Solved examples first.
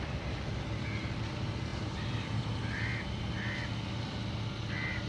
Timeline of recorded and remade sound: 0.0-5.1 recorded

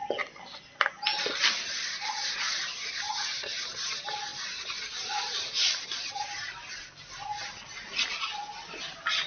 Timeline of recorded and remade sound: 0.0-9.3 recorded

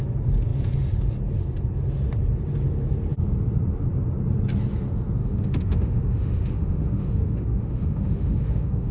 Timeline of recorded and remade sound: 0.0-5.2 recorded; 5.2-8.9 remade

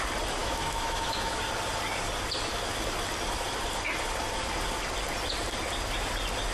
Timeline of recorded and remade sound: 0.0-0.4 recorded; 0.4-1.4 remade; 1.4-6.5 recorded

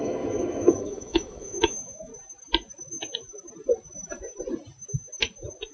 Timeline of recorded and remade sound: 0.0-2.1 remade; 2.1-5.7 recorded

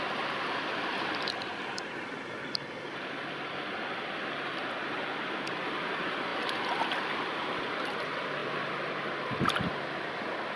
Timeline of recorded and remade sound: 0.0-10.6 recorded